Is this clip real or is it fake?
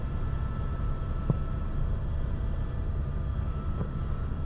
fake